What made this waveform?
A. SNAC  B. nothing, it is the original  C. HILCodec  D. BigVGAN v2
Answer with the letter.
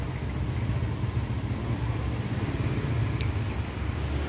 B